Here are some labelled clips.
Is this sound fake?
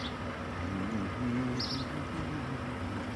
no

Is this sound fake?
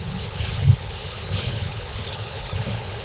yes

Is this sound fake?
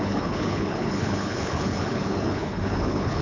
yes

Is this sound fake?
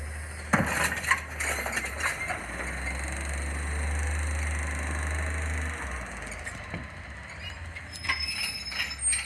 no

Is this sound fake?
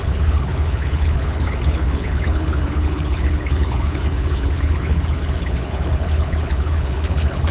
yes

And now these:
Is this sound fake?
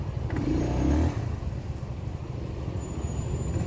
no